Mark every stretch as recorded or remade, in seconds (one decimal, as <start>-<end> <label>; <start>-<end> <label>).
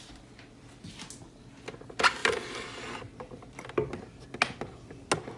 0.0-5.4 recorded